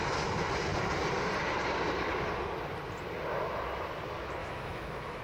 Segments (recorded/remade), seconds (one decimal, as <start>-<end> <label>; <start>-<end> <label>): 0.0-4.4 recorded; 4.4-5.2 remade